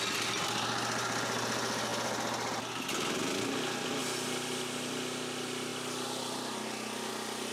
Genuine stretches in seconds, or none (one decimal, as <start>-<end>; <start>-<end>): 0.0-7.5